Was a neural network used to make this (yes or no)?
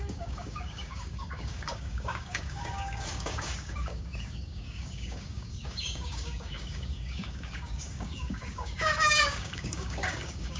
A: yes